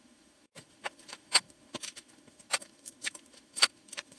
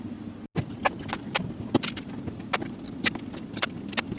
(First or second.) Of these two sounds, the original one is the second